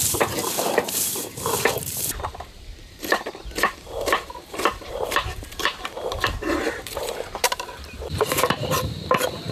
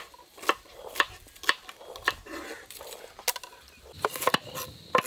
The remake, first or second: first